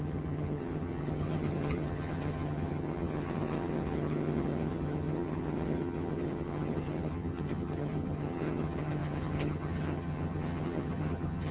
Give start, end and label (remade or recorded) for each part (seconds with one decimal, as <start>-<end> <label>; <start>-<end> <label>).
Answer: 0.0-11.5 remade